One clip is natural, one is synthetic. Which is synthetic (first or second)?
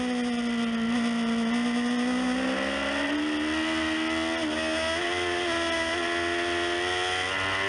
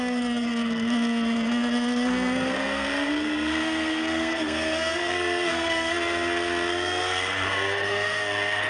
second